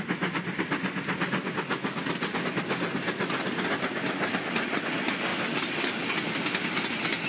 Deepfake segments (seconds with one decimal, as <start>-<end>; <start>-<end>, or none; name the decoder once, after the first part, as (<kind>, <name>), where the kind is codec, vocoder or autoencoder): none